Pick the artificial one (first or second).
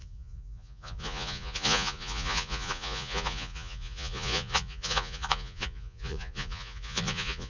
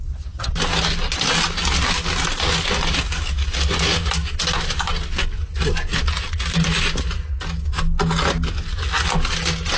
first